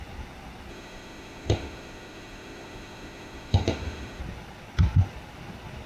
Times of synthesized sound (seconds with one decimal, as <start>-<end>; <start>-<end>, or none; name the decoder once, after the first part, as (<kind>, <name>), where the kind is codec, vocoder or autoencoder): 0.7-4.2 (autoencoder, DAC-VAE)